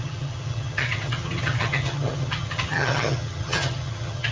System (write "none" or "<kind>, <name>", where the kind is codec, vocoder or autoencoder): vocoder, HiFi-GAN